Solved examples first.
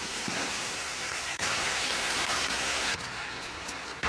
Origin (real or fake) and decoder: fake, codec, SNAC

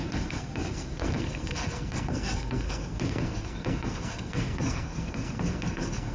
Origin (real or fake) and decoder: fake, codec, SNAC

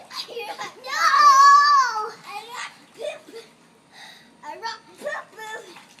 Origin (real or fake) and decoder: real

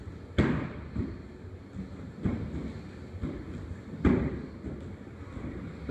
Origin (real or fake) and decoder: real